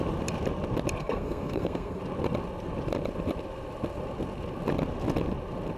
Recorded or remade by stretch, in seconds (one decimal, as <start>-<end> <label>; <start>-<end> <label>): 0.0-1.0 recorded; 1.0-2.0 remade; 2.0-5.8 recorded